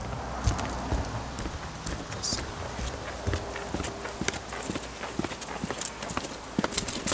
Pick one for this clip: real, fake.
real